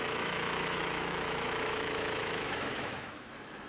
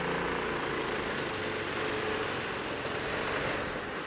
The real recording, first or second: second